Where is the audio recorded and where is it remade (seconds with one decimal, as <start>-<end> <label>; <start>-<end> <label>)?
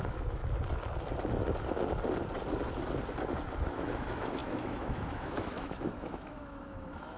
0.0-0.4 remade; 0.4-3.7 recorded; 3.7-7.2 remade